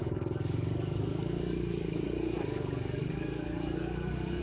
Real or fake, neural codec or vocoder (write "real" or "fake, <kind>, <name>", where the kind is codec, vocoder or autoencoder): fake, codec, DAC